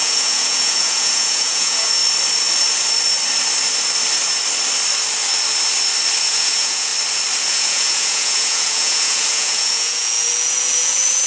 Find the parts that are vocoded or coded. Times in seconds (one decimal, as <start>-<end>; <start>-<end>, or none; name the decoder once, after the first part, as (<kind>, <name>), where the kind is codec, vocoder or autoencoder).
0.0-2.0 (vocoder, Vocos); 6.2-6.9; 7.4-11.3